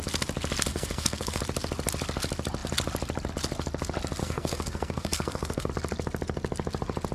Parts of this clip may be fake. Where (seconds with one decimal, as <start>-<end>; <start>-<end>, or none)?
0.7-1.4; 4.2-5.7